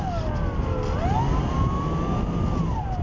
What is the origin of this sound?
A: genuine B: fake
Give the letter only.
A